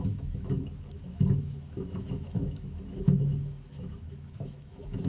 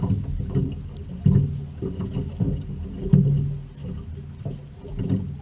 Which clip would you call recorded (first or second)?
second